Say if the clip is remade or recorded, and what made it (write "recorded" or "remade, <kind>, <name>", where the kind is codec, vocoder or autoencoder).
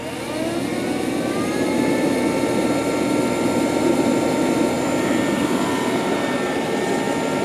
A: recorded